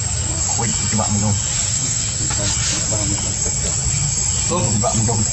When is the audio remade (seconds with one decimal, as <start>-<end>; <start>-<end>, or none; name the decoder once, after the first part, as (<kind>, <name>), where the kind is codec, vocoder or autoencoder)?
1.7-2.3 (codec, SNAC)